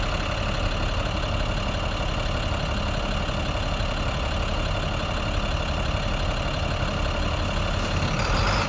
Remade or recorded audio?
recorded